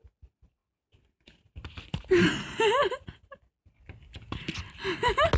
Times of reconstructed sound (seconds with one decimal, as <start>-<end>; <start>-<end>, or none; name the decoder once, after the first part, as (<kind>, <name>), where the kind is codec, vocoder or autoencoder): none